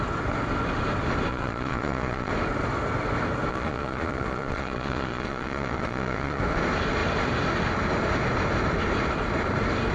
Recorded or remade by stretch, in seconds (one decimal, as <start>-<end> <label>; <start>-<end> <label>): 0.0-1.3 recorded; 1.3-2.3 remade; 2.3-3.5 recorded; 3.5-6.4 remade; 6.4-9.9 recorded

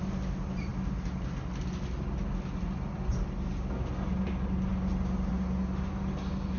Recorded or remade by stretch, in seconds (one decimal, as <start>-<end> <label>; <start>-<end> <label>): 0.0-6.6 recorded

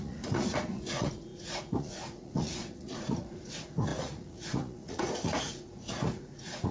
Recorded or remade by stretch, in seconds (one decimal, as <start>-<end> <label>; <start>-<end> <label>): 0.0-6.7 remade

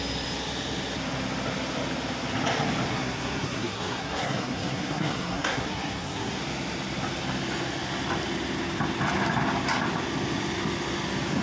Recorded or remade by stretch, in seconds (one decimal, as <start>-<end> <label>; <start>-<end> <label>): 0.0-2.9 recorded; 2.9-6.4 remade; 6.4-11.4 recorded

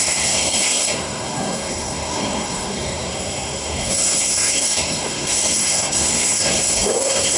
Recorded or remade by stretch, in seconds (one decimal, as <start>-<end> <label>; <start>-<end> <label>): 0.0-7.4 remade

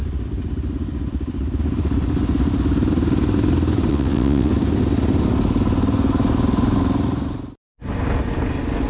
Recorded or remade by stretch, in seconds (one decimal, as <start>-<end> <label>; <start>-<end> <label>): 0.0-3.9 recorded; 3.9-4.5 remade; 4.5-8.9 recorded

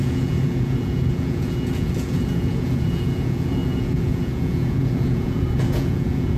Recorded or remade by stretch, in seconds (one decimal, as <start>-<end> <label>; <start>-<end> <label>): 0.0-6.4 remade